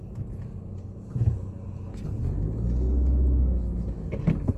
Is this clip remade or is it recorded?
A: recorded